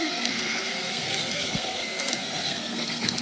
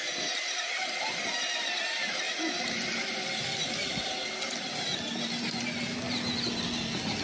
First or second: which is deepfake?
first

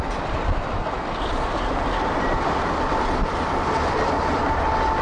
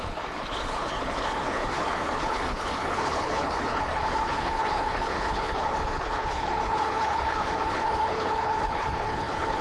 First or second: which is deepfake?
second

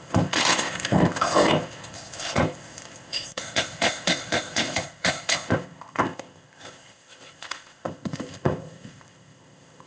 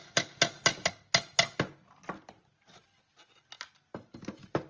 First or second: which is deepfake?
first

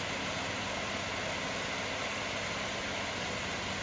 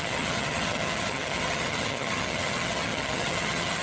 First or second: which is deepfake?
second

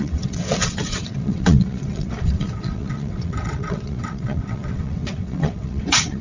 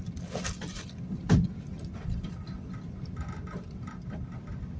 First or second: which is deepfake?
first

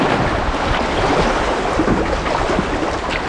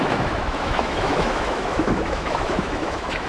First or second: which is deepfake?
second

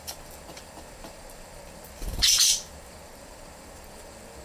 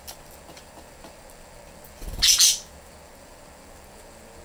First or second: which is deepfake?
first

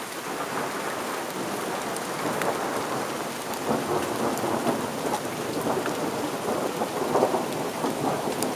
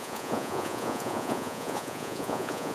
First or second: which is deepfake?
second